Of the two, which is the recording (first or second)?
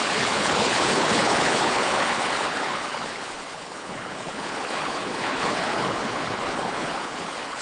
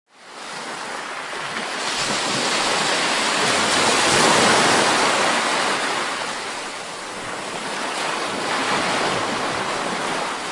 second